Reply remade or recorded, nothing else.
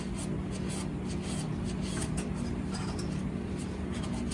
recorded